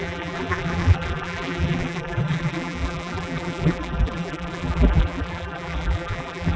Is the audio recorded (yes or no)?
no